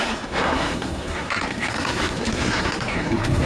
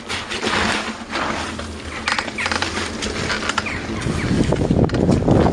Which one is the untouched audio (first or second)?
second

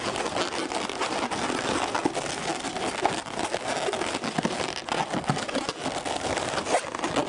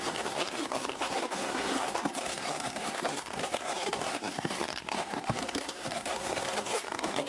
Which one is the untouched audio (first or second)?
first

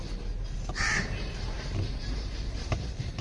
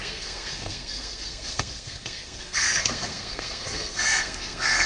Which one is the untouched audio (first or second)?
first